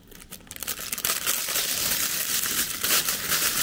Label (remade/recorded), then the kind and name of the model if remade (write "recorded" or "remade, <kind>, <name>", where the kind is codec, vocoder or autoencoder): remade, vocoder, BigVGAN v2